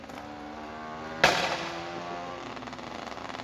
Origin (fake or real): real